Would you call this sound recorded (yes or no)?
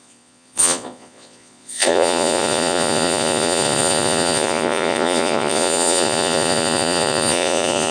no